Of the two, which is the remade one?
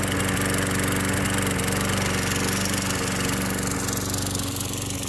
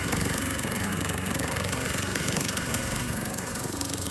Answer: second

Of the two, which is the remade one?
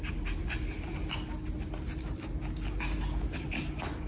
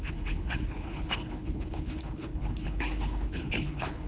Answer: second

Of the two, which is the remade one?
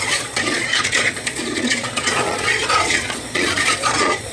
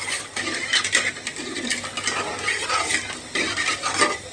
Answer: first